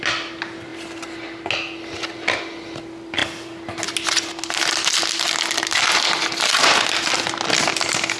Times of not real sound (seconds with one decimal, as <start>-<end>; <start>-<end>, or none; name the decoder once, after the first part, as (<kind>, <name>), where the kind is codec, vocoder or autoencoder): none